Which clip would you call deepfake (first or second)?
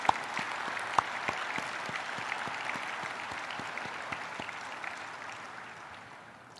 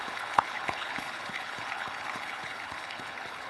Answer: second